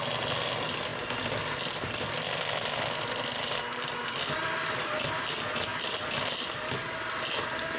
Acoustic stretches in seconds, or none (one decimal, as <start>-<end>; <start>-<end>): 0.0-0.9; 4.7-5.7; 6.5-7.8